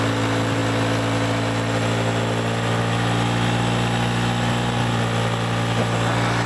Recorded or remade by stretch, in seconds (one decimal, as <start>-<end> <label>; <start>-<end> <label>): 0.0-6.5 recorded